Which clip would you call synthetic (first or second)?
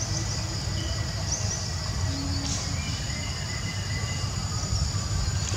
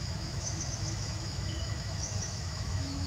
second